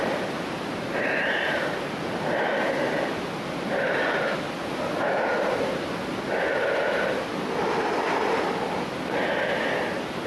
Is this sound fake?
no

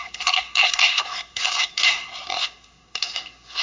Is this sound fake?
yes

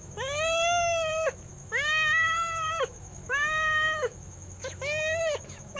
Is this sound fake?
yes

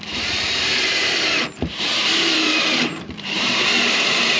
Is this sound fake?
yes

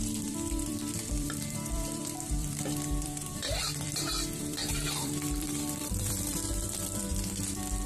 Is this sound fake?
yes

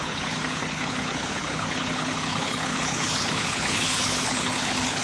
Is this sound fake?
yes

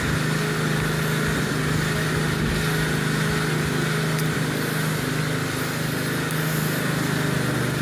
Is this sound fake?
no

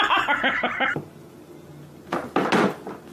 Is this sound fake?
no